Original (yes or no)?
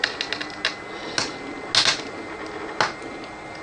yes